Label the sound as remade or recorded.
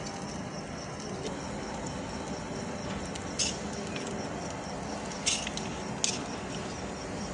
recorded